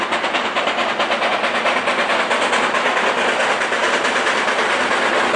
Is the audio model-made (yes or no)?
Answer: no